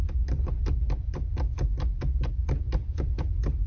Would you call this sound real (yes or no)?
yes